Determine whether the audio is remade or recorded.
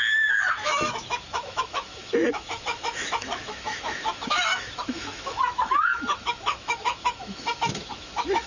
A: remade